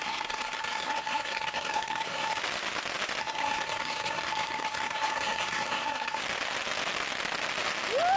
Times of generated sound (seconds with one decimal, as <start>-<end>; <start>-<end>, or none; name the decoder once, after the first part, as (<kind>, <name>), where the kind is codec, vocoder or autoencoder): 0.0-2.4 (codec, SNAC); 3.2-6.2